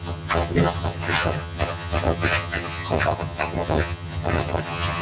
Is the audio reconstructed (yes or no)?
yes